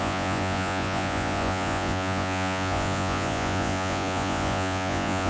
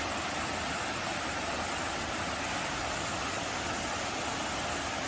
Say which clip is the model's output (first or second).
first